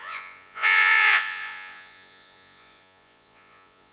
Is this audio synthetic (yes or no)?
yes